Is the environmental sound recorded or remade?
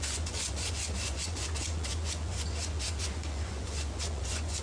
remade